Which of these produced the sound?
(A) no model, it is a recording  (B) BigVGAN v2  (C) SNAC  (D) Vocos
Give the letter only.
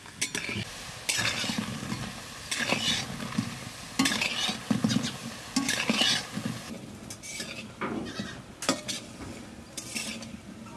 A